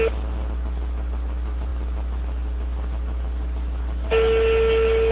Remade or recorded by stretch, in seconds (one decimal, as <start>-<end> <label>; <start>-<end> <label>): 0.0-5.1 recorded